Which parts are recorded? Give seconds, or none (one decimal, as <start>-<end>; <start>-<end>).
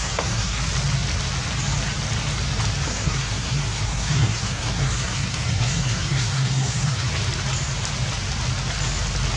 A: 0.6-2.9; 7.1-9.4